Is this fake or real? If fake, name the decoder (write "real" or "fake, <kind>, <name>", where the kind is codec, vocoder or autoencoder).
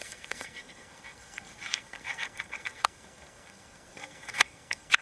fake, codec, SNAC